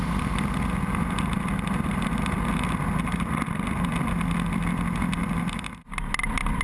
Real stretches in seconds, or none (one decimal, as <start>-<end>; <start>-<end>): 0.0-6.6